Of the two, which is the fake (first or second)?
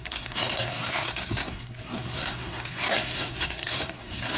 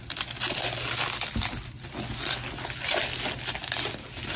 first